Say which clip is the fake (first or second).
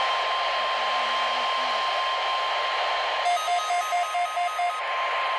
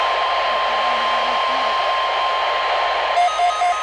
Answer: second